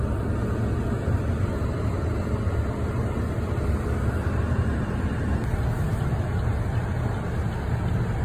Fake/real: real